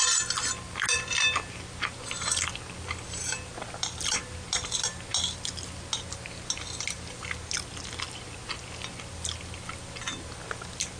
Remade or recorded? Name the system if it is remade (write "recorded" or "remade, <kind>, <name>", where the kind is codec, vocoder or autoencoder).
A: recorded